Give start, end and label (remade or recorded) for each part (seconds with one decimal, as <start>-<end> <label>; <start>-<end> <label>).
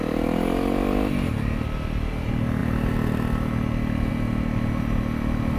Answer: 0.0-5.6 recorded